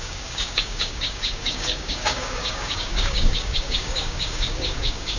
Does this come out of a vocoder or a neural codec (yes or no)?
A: yes